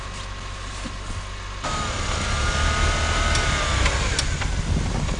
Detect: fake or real real